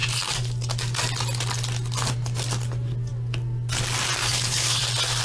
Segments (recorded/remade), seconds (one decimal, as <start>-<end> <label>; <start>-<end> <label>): 0.0-4.2 recorded; 4.2-4.8 remade; 4.8-5.2 recorded